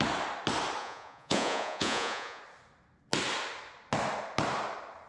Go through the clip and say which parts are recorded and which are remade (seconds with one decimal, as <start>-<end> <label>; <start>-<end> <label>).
0.0-0.8 recorded; 0.8-2.4 remade; 2.4-5.1 recorded